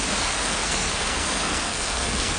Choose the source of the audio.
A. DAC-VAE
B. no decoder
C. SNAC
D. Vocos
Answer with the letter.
C